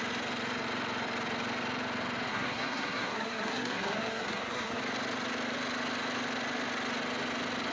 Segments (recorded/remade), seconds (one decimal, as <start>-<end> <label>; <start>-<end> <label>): 0.0-2.3 recorded; 2.3-4.8 remade; 4.8-7.7 recorded